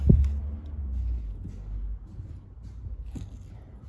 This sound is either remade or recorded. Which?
recorded